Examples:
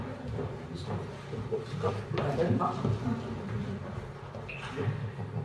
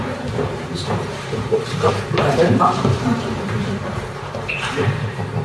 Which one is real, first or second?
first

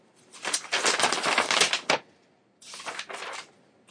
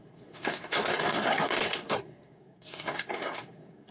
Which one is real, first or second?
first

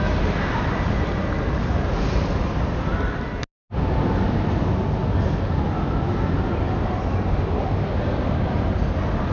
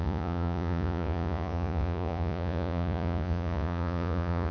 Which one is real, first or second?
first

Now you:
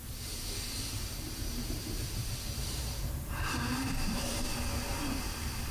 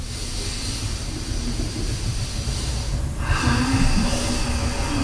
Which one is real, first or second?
second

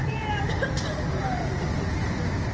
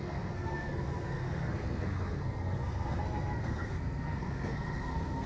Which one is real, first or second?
first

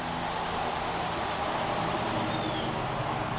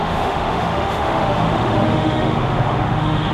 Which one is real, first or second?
first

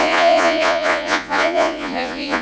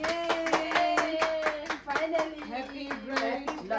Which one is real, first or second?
second